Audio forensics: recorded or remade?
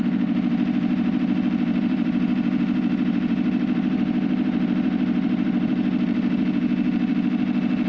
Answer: remade